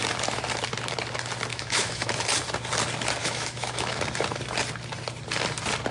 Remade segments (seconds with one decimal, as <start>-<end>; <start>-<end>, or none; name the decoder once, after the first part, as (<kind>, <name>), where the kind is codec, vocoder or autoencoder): 1.5-2.2 (autoencoder, DAC-VAE); 3.2-4.0